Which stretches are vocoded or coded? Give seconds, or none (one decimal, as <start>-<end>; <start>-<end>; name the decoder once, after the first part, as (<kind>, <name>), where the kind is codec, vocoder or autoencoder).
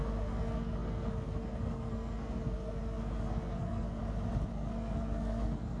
0.0-4.0 (codec, SNAC); 4.5-5.8